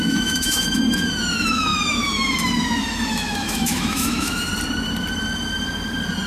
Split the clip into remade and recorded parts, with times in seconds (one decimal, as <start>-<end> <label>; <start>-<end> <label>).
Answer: 0.0-4.5 remade; 4.5-6.3 recorded